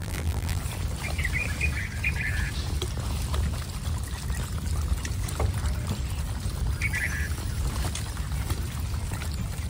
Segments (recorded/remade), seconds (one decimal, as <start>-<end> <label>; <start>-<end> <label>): 0.0-0.6 remade; 0.6-9.7 recorded

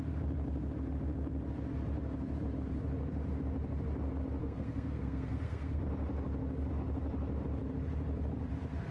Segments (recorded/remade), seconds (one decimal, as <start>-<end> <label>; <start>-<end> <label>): 0.0-4.4 recorded; 4.4-5.8 remade; 5.8-8.9 recorded